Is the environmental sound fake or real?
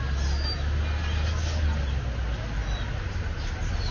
real